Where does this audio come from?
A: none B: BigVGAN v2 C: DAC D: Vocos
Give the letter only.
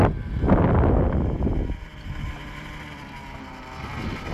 A